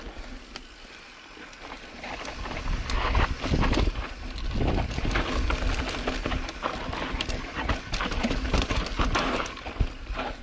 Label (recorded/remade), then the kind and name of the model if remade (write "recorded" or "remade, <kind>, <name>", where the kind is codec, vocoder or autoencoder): recorded